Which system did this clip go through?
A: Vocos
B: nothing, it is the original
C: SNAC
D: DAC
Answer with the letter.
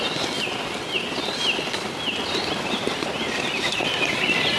B